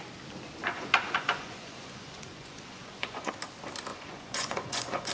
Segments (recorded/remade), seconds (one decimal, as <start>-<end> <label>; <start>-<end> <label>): 0.0-0.6 recorded; 0.6-3.3 remade; 3.3-3.9 recorded; 3.9-5.1 remade